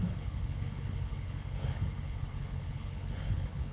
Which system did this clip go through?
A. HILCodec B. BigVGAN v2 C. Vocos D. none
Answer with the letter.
A